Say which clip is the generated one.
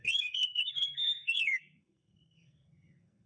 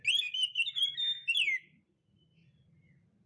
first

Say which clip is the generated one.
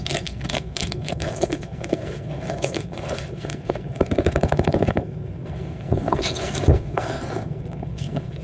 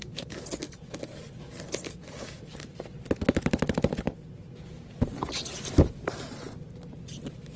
first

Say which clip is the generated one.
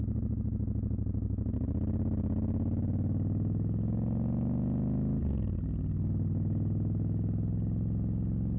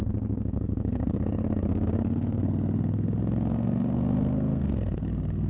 second